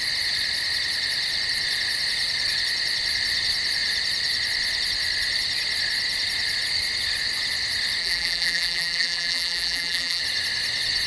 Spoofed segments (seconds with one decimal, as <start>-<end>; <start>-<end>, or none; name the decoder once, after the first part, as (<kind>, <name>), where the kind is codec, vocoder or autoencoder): 8.0-10.2 (vocoder, BigVGAN v2)